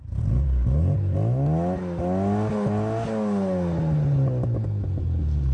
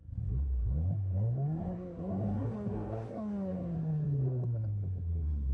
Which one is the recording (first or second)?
first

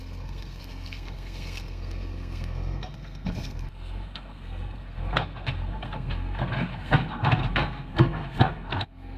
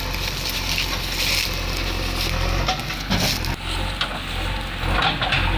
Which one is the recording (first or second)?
second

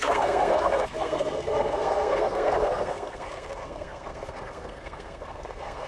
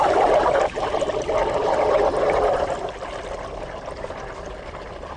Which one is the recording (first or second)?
second